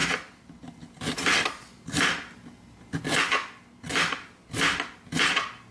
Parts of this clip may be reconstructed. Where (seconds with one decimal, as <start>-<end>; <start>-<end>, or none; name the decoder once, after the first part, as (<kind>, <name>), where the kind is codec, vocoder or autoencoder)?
none